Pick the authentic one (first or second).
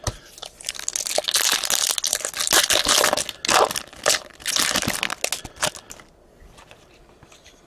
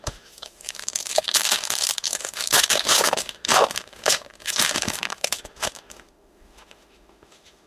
first